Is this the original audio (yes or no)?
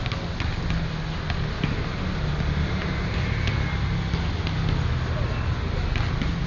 yes